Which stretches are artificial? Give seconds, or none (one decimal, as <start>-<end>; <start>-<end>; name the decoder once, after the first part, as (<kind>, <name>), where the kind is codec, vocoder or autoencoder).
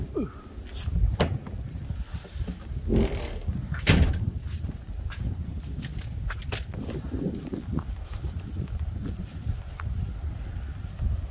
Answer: none